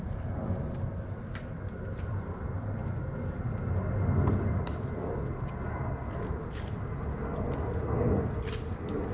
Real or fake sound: real